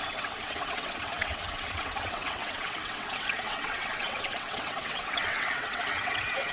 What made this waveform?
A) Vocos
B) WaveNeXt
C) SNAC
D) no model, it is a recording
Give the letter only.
B